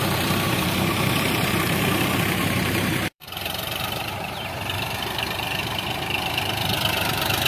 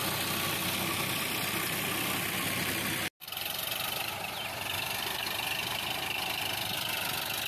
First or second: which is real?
second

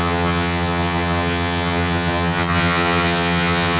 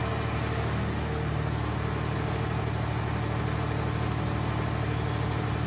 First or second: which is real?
second